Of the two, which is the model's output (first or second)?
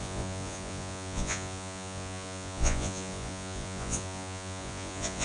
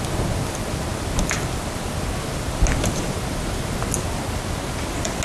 first